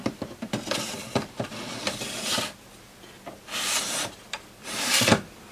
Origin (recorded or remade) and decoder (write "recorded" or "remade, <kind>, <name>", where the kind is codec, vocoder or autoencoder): remade, vocoder, BigVGAN v2